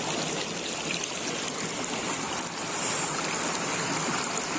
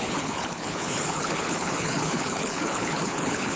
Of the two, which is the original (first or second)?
first